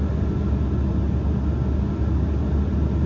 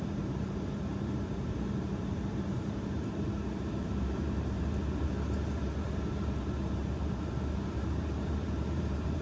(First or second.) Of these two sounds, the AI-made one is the second